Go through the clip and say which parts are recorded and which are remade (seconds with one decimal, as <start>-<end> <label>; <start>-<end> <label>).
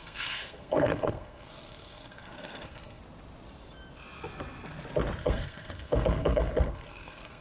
0.0-3.0 remade; 3.0-5.2 recorded; 5.2-7.4 remade